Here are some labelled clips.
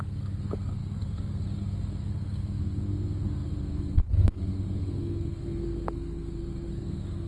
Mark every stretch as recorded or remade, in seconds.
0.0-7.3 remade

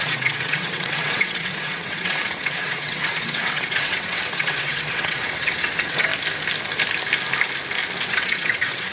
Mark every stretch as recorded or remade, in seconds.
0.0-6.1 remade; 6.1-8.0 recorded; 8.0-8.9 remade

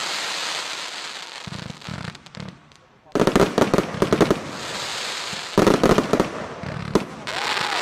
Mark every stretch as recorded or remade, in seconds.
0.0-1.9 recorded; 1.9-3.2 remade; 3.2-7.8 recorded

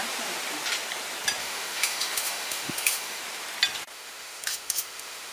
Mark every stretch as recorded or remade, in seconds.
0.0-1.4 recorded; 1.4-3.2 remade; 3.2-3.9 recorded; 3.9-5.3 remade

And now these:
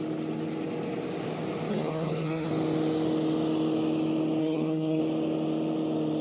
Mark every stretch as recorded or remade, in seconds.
0.0-1.7 recorded; 1.7-2.5 remade; 2.5-4.4 recorded; 4.4-5.0 remade; 5.0-6.2 recorded

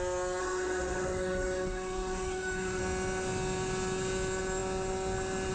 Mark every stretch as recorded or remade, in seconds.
0.0-0.4 recorded; 0.4-2.8 remade; 2.8-5.5 recorded

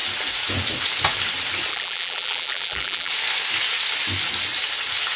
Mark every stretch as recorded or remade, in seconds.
0.0-1.7 recorded; 1.7-3.1 remade; 3.1-5.2 recorded